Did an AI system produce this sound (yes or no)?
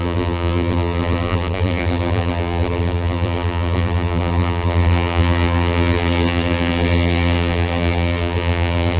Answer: yes